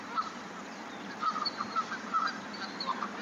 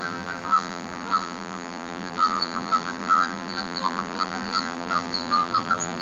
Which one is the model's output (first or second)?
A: second